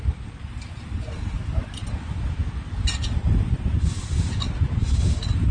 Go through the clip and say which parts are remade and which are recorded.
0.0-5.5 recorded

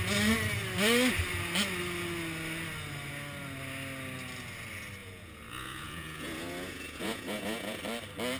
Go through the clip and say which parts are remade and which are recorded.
0.0-5.0 recorded; 5.0-7.8 remade; 7.8-8.4 recorded

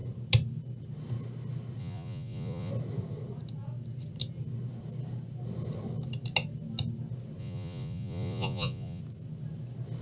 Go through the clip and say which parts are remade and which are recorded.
0.0-1.8 recorded; 1.8-2.7 remade; 2.7-7.4 recorded; 7.4-9.0 remade; 9.0-10.0 recorded

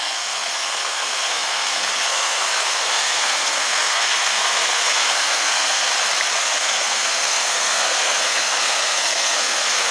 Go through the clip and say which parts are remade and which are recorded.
0.0-5.9 remade; 5.9-6.4 recorded; 6.4-9.9 remade